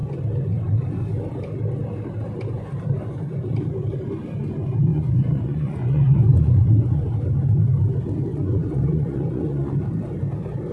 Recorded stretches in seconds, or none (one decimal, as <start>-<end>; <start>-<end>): 0.0-4.9; 7.1-8.3; 9.7-10.7